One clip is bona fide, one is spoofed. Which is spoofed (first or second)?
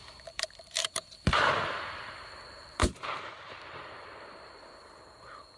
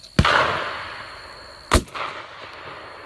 first